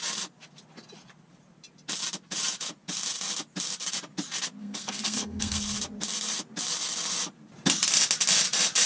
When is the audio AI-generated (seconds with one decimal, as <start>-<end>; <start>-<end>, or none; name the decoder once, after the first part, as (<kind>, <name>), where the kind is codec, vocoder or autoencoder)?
4.6-5.6 (codec, SNAC)